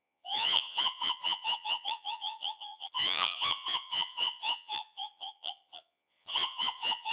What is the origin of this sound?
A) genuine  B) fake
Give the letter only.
B